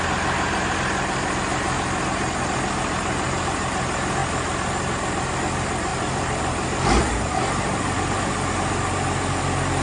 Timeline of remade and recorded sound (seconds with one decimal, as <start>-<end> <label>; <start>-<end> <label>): 0.0-5.9 recorded; 5.9-8.5 remade; 8.5-9.8 recorded

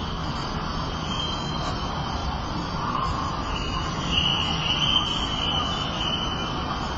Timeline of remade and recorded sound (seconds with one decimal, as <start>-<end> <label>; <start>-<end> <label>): 0.0-2.2 recorded; 2.2-3.0 remade; 3.0-7.0 recorded

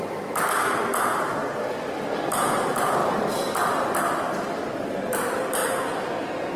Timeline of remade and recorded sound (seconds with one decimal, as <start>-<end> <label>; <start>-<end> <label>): 0.0-1.4 remade; 1.4-2.1 recorded; 2.1-3.0 remade; 3.0-4.6 recorded; 4.6-5.6 remade; 5.6-6.6 recorded

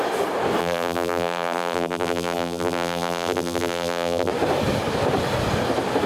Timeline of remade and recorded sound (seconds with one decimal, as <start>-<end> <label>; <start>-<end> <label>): 0.0-0.6 recorded; 0.6-4.3 remade; 4.3-6.1 recorded

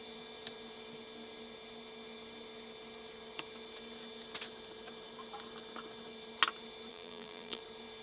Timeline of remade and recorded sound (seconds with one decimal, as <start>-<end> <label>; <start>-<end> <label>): 0.0-6.9 recorded; 6.9-7.6 remade; 7.6-8.0 recorded

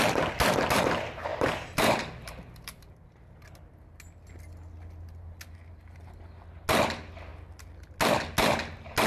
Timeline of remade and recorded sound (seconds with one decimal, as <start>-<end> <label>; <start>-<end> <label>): 0.0-1.3 recorded; 1.3-2.9 remade; 2.9-9.1 recorded

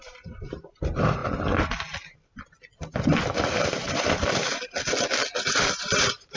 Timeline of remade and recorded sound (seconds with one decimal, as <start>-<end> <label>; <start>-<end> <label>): 0.0-1.2 remade; 1.2-3.5 recorded; 3.5-4.5 remade; 4.5-5.4 recorded; 5.4-6.4 remade